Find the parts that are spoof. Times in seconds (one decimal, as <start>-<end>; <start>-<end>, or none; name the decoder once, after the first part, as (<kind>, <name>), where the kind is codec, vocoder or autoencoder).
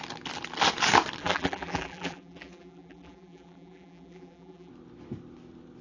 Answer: 1.2-4.7 (vocoder, BigVGAN v2)